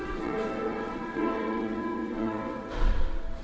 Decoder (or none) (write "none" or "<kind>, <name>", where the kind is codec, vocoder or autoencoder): vocoder, WaveNeXt